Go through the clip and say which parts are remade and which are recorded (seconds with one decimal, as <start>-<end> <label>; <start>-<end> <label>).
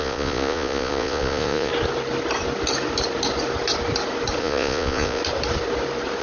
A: 0.0-1.7 remade; 1.7-4.4 recorded; 4.4-5.2 remade; 5.2-6.2 recorded